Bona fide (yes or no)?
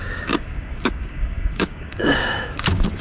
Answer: no